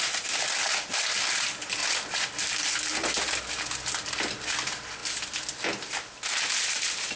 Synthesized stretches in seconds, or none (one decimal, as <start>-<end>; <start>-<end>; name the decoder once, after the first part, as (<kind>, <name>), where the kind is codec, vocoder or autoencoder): none